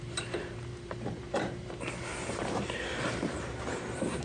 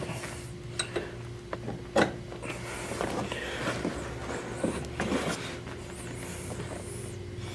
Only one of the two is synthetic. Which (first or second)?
first